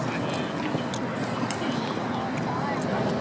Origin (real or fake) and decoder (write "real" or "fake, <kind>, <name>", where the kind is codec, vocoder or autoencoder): real